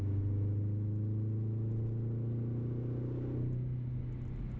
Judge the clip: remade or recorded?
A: recorded